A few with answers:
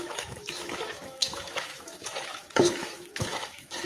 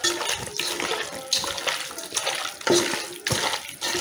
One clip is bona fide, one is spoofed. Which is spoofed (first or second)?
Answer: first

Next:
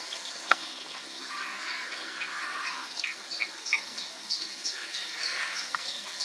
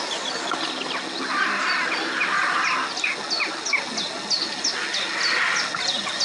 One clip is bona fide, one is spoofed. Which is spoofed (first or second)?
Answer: first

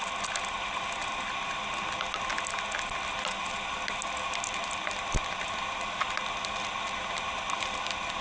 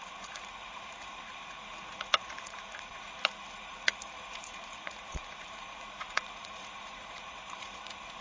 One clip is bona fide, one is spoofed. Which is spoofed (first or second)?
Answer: second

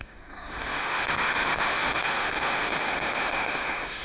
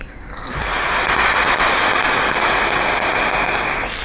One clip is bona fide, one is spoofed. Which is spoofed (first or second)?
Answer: first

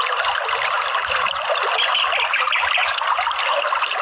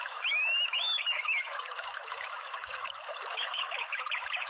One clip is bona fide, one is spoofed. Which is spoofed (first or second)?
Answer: second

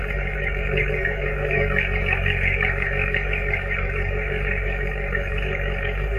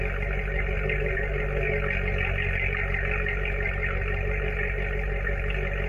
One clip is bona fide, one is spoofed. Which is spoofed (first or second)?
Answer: first